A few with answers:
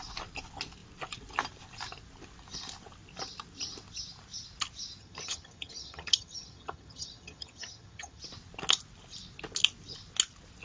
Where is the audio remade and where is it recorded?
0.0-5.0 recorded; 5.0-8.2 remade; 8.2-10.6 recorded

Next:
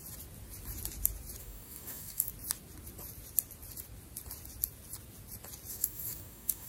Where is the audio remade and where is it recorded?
0.0-1.4 recorded; 1.4-2.3 remade; 2.3-5.7 recorded; 5.7-6.7 remade

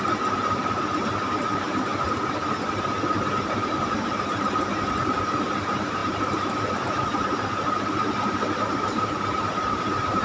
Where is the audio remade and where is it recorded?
0.0-1.9 remade; 1.9-2.8 recorded; 2.8-10.2 remade

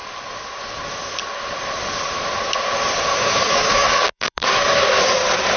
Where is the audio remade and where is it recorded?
0.0-3.1 recorded; 3.1-4.8 remade; 4.8-5.6 recorded